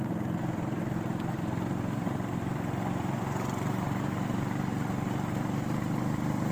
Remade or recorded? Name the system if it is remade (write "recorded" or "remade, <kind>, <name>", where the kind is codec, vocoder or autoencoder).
recorded